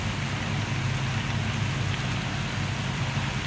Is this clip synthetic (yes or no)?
no